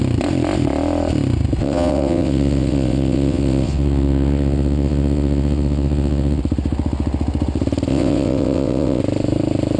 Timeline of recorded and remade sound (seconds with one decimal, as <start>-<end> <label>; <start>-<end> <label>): 0.0-1.6 recorded; 1.6-6.4 remade; 6.4-7.9 recorded; 7.9-9.0 remade; 9.0-9.8 recorded